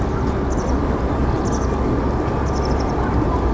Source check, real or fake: real